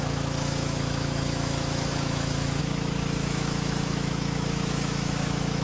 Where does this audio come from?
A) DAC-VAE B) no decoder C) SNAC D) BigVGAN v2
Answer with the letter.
A